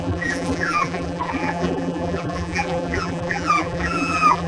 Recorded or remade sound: remade